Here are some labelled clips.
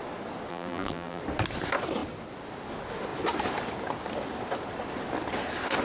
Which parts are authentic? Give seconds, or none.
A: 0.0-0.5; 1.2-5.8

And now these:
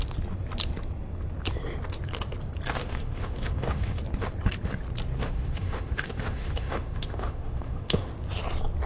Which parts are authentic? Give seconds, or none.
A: 0.0-2.8; 4.0-5.2; 8.1-8.9

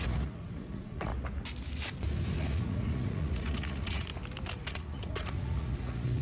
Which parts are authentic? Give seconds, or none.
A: 1.1-2.4; 4.1-4.7

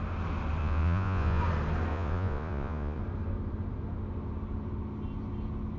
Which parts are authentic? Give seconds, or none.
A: 0.0-0.6; 1.4-1.9; 3.0-5.8

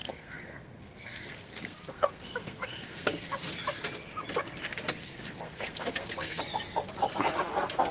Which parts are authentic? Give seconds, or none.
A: 3.4-5.0; 6.4-7.9

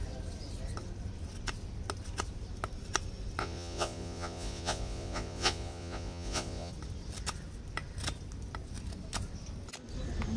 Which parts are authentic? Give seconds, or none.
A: 0.0-3.4; 6.7-10.4

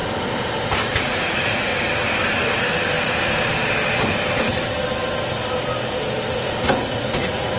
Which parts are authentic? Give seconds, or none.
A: 0.0-0.9; 1.7-6.3